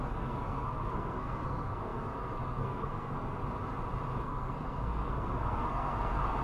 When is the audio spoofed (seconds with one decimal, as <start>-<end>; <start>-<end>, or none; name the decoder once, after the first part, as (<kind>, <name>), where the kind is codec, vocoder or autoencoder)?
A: 0.0-3.4 (codec, SNAC); 4.2-6.4